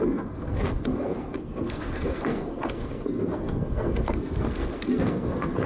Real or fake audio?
fake